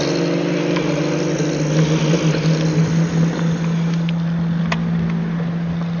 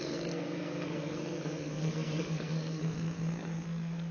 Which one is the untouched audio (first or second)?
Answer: first